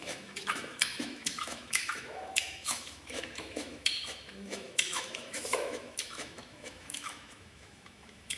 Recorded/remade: remade